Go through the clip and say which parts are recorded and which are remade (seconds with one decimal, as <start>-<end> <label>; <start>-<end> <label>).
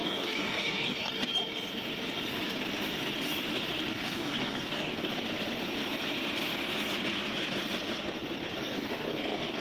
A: 0.0-1.1 remade; 1.1-3.9 recorded; 3.9-5.1 remade; 5.1-8.6 recorded; 8.6-9.6 remade